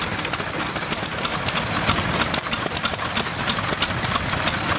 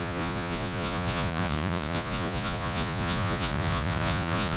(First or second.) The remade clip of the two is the second